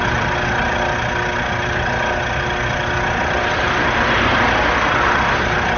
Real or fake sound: real